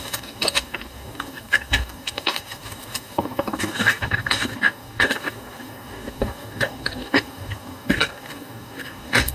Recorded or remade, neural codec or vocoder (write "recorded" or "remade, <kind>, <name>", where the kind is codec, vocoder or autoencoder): remade, codec, DAC